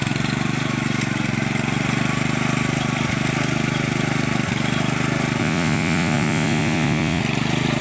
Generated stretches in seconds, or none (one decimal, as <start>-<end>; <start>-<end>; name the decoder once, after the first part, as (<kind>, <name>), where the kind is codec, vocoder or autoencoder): 5.4-7.2 (vocoder, Vocos)